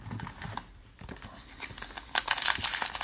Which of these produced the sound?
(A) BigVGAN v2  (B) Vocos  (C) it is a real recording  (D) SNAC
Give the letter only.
C